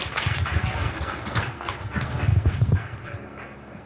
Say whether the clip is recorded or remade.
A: remade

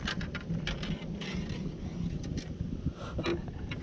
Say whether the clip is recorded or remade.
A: recorded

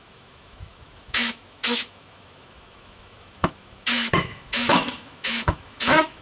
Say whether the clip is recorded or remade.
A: remade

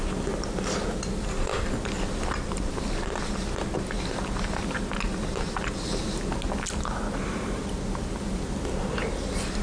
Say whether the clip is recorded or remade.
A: recorded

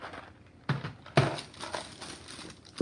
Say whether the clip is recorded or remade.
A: recorded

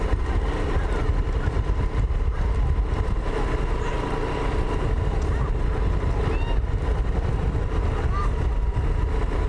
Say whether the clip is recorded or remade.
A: recorded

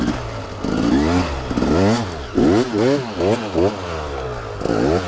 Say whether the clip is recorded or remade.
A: recorded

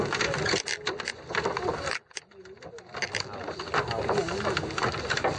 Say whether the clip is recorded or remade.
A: recorded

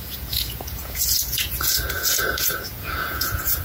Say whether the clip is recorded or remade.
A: remade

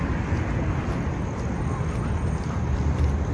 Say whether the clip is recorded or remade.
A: recorded